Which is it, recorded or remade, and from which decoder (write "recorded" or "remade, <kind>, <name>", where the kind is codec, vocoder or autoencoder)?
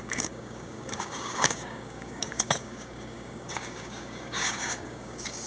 remade, codec, DAC